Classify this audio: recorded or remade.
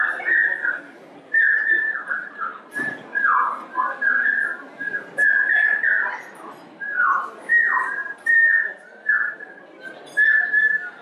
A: recorded